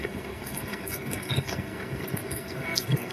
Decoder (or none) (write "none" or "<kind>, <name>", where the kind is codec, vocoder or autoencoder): codec, SNAC